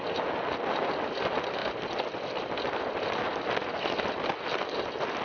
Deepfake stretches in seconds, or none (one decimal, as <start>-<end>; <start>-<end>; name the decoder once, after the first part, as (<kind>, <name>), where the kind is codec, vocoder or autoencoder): none